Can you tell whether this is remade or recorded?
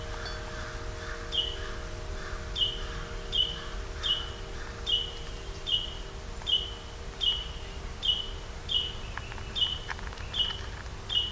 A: recorded